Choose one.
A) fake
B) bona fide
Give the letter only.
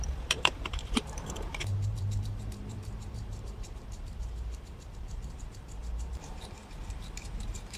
A